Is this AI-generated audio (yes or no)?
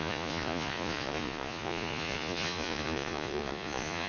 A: yes